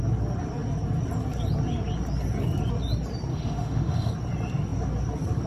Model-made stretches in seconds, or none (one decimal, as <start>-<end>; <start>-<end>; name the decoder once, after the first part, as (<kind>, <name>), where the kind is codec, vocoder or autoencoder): 3.3-4.1 (autoencoder, DAC-VAE)